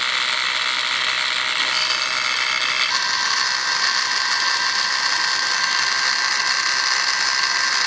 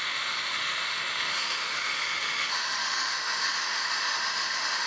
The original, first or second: first